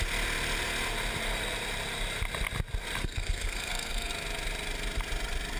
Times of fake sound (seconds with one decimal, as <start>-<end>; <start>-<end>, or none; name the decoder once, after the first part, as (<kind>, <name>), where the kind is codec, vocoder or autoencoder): 3.0-4.1 (codec, SNAC)

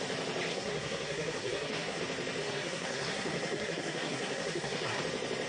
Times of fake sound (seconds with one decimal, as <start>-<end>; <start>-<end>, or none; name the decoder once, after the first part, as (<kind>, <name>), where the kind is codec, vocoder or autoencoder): 0.5-2.0 (codec, SNAC); 2.4-5.0

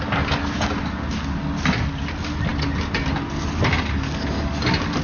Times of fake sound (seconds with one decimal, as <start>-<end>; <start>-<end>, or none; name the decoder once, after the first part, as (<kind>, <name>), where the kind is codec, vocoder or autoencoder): none